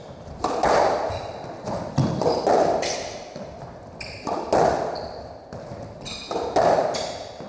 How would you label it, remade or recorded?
recorded